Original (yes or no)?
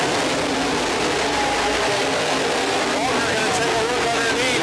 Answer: yes